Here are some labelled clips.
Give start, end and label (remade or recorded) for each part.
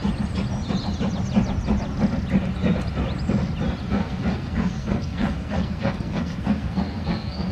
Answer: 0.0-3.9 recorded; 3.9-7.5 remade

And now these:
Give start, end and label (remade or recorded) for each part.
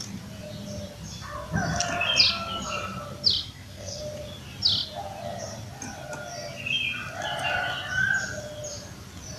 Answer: 0.0-3.4 recorded; 3.4-4.0 remade; 4.0-9.4 recorded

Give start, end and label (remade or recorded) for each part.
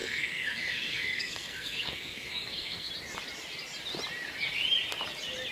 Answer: 0.0-2.9 remade; 2.9-5.5 recorded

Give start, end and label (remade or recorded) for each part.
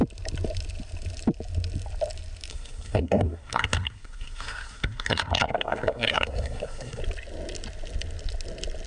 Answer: 0.0-2.5 recorded; 2.5-7.0 remade; 7.0-8.9 recorded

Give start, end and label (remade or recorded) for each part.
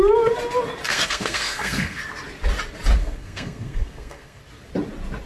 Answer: 0.0-0.9 recorded; 0.9-2.0 remade; 2.0-3.0 recorded; 3.0-4.4 remade; 4.4-5.3 recorded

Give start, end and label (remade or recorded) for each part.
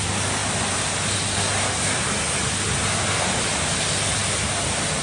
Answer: 0.0-5.0 recorded